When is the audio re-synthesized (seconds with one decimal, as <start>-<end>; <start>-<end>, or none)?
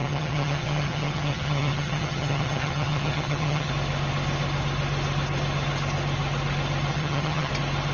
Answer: 0.0-3.7; 6.9-7.5